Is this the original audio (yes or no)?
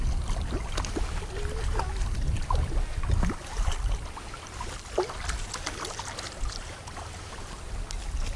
yes